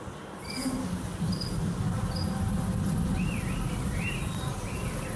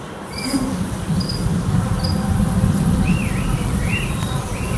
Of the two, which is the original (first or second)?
first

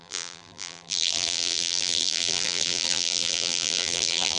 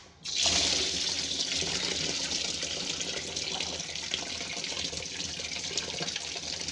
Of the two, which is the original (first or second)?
second